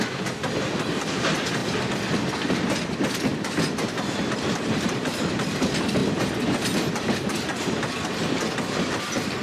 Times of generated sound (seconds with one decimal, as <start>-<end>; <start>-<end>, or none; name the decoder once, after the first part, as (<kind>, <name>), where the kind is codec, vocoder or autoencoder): 0.0-9.4 (vocoder, BigVGAN v2)